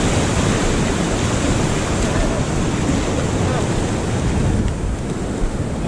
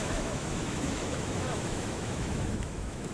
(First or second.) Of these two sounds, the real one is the first